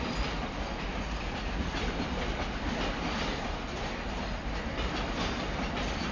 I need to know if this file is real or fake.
real